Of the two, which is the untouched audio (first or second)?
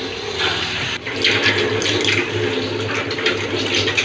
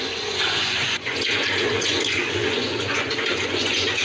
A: first